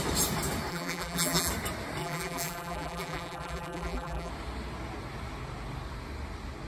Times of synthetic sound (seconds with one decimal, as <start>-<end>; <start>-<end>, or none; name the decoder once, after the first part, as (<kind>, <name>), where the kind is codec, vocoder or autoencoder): 0.7-1.5 (vocoder, BigVGAN v2); 2.0-4.3